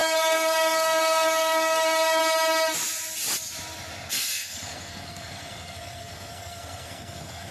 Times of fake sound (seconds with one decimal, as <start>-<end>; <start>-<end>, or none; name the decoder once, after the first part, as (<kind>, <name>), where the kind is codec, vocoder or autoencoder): 0.0-2.2 (codec, SNAC); 4.1-7.5